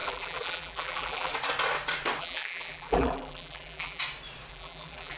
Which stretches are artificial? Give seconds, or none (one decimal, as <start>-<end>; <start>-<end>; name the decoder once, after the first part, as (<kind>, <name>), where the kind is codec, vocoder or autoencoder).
0.0-1.3 (vocoder, BigVGAN v2); 2.2-4.0; 4.5-5.2